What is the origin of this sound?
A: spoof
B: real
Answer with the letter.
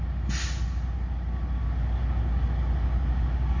B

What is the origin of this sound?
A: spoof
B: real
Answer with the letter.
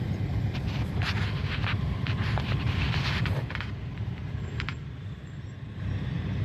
A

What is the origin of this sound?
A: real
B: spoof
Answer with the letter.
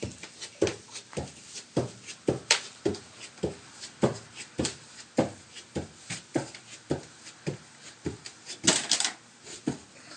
A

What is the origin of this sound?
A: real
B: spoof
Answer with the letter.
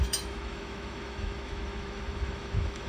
B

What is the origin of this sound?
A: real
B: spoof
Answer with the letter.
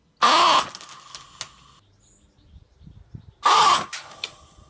A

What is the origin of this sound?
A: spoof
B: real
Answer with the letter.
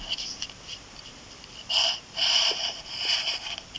A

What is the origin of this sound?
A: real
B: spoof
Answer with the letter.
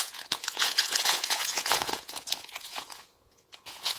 B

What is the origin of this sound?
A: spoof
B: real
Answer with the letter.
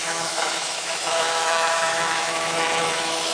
A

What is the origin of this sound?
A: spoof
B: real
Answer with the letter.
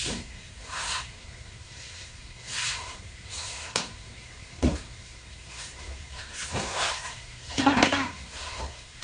A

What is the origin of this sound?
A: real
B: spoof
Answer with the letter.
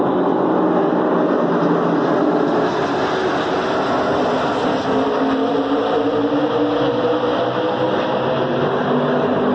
A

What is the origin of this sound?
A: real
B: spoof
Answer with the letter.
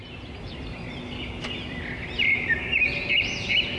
A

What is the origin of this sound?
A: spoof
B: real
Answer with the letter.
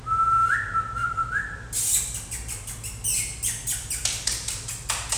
B